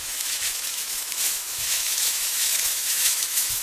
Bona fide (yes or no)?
no